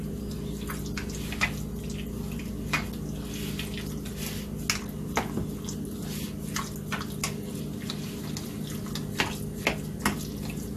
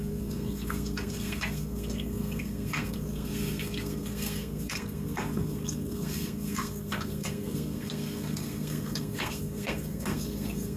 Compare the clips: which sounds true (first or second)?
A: first